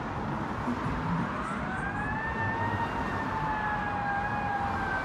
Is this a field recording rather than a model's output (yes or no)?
yes